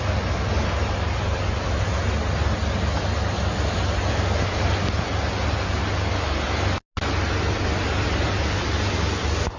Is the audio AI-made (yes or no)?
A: no